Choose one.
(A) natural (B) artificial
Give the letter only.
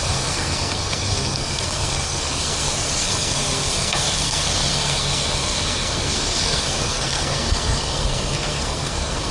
B